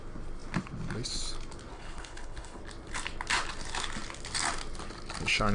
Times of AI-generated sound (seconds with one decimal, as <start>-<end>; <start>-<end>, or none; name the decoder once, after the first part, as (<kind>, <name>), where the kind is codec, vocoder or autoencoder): 1.7-2.6 (codec, HILCodec)